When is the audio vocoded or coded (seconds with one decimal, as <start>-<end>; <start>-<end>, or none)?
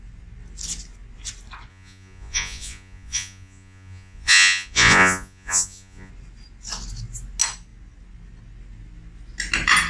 1.7-6.1